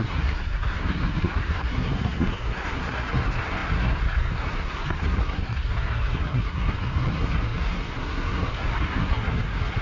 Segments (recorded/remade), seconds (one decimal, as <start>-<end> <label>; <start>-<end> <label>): 0.0-9.8 remade